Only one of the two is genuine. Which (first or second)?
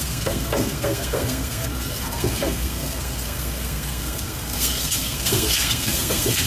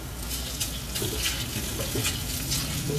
second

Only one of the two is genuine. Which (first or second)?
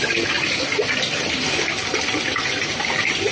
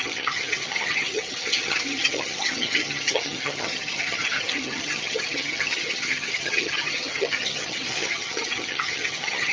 first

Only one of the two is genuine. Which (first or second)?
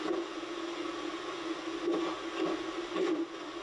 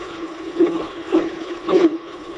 first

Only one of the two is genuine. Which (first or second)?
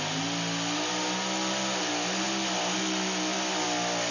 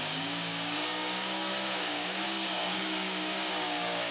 first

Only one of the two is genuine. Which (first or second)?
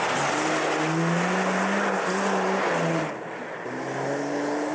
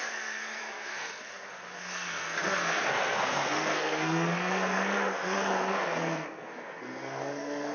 first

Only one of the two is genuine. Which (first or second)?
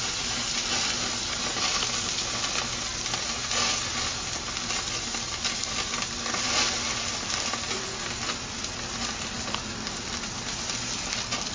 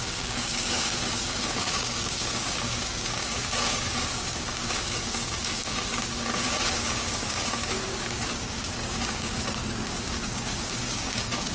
first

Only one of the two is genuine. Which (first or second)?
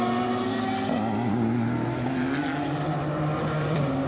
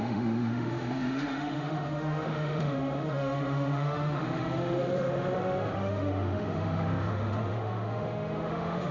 first